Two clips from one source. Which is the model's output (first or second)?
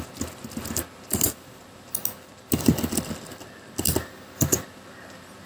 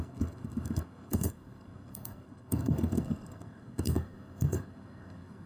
second